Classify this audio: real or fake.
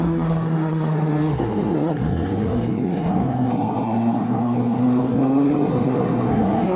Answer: fake